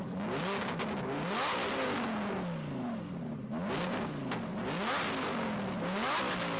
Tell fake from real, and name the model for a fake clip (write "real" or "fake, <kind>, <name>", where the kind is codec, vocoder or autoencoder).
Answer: real